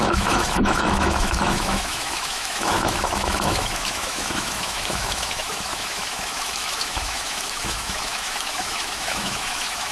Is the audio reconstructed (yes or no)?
yes